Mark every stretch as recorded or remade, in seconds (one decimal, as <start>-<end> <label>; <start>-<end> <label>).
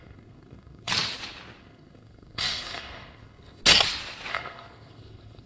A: 0.0-0.9 remade; 0.9-1.6 recorded; 1.6-3.6 remade; 3.6-4.3 recorded; 4.3-5.5 remade